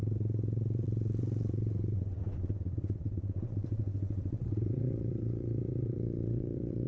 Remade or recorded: remade